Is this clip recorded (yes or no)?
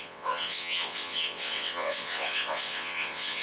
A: no